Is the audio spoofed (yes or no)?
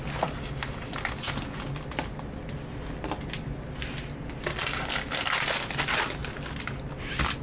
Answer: no